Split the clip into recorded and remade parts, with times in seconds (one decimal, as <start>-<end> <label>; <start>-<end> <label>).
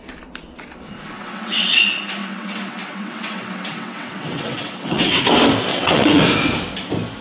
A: 0.0-1.2 recorded; 1.2-1.8 remade; 1.8-2.2 recorded; 2.2-5.2 remade; 5.2-5.7 recorded; 5.7-6.2 remade; 6.2-7.2 recorded